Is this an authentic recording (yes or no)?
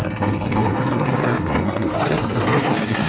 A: no